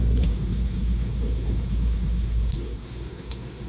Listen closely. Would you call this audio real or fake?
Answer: fake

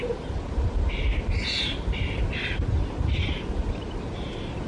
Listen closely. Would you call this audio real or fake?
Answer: real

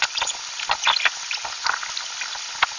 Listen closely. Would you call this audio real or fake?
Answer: real